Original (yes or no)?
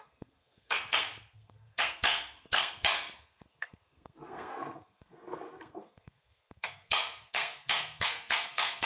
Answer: no